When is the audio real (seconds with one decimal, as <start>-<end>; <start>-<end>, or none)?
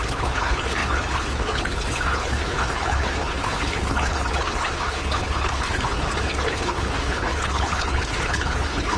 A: none